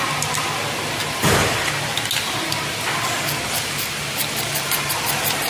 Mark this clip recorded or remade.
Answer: recorded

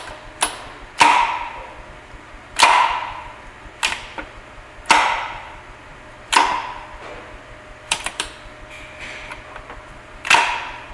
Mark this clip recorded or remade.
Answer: recorded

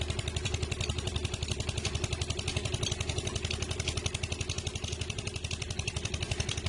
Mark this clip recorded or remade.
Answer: recorded